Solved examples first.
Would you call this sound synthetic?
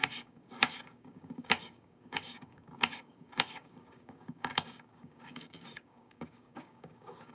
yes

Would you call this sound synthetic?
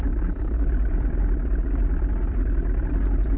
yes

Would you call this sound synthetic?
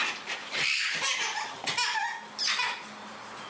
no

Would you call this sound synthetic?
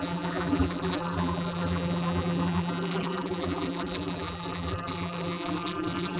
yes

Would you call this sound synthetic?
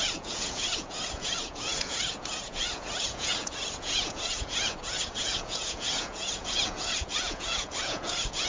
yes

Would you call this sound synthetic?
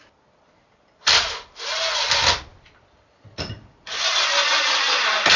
no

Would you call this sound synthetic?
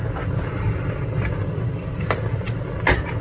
no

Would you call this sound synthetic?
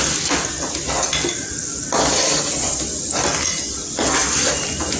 no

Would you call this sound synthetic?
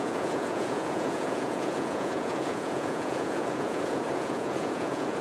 yes